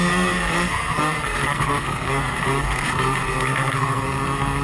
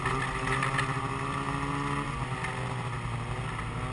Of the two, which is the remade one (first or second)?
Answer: first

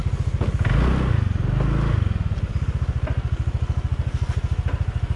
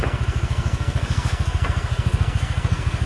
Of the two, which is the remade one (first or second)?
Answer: second